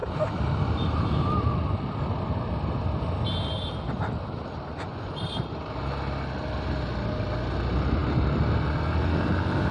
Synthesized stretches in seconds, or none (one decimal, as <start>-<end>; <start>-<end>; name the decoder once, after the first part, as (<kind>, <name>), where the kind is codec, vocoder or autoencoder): 4.7-5.2 (vocoder, Vocos)